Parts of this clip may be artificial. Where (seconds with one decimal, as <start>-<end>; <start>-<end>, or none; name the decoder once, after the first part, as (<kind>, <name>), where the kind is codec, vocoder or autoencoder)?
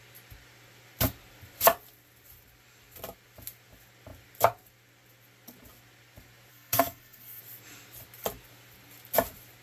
6.5-7.4 (codec, SNAC)